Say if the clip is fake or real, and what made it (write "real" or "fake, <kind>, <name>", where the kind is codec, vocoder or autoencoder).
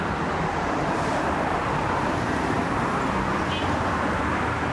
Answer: fake, vocoder, BigVGAN v2